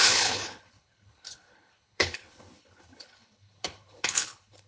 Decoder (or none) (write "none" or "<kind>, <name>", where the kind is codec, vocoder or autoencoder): codec, HILCodec